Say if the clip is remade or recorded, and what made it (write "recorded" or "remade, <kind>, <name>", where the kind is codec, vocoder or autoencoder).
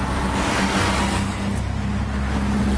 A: recorded